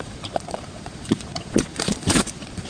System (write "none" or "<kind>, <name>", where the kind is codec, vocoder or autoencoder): vocoder, Vocos